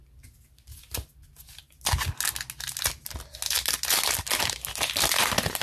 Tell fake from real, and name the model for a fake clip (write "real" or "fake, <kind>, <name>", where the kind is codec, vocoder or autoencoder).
real